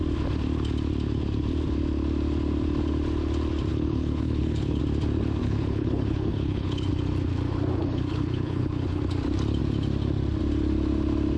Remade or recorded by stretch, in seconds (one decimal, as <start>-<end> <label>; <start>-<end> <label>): 0.0-3.7 recorded; 3.7-4.8 remade; 4.8-5.4 recorded; 5.4-6.9 remade; 6.9-7.8 recorded; 7.8-9.0 remade; 9.0-11.4 recorded